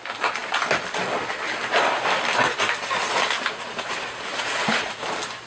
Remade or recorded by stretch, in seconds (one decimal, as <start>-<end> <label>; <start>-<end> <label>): 0.0-4.3 recorded; 4.3-5.0 remade; 5.0-5.5 recorded